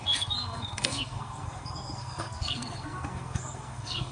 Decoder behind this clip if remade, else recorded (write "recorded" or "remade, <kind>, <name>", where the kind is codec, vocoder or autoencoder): remade, codec, SNAC